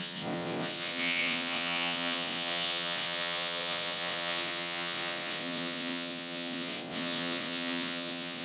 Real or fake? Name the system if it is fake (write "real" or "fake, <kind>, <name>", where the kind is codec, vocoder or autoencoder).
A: fake, vocoder, WaveNeXt